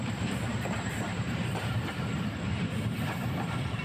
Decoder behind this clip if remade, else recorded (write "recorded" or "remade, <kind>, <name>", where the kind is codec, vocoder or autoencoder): remade, vocoder, BigVGAN v2